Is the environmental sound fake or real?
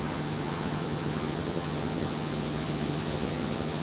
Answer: fake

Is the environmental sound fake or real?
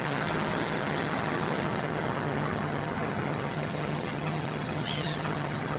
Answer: fake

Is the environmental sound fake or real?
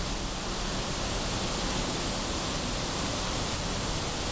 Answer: real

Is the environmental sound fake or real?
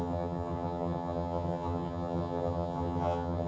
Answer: fake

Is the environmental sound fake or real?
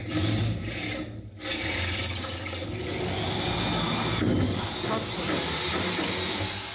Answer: real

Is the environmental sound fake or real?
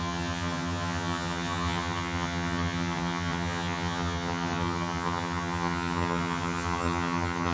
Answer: fake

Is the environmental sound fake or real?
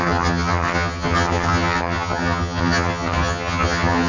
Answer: fake